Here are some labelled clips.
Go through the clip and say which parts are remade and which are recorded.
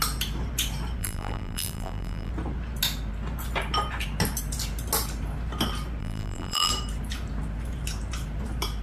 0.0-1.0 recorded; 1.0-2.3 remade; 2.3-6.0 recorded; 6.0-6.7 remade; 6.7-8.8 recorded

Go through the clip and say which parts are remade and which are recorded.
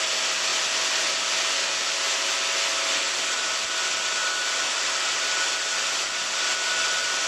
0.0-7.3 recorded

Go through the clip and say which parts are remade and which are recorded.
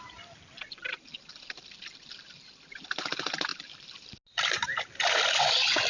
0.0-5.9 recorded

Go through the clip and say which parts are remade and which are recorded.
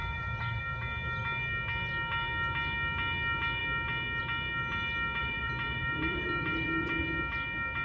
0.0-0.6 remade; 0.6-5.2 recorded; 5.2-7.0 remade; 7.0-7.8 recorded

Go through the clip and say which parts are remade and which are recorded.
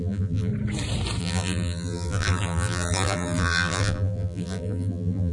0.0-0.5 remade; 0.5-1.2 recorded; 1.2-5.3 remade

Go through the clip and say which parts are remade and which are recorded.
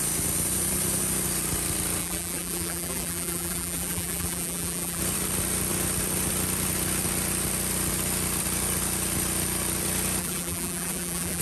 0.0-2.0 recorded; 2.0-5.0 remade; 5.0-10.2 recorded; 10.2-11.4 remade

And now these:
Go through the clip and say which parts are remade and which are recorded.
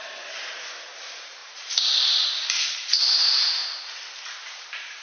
0.0-3.6 remade; 3.6-4.6 recorded; 4.6-5.0 remade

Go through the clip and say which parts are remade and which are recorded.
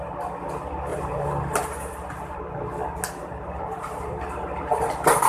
0.0-0.9 recorded; 0.9-2.4 remade; 2.4-3.2 recorded; 3.2-5.3 remade